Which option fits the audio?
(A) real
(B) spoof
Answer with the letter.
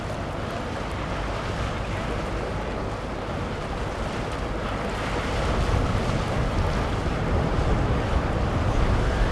A